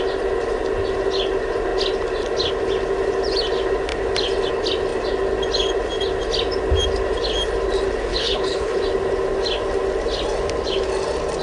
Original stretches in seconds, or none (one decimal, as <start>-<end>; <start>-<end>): 0.0-8.1; 8.8-11.4